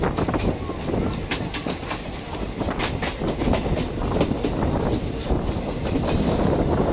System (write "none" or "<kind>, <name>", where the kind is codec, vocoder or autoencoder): none